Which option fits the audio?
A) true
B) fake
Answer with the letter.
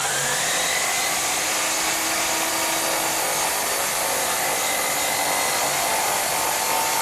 A